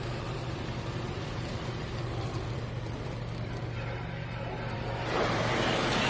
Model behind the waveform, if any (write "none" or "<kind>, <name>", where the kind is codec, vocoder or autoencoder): vocoder, BigVGAN v2